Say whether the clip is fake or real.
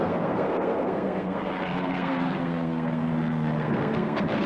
fake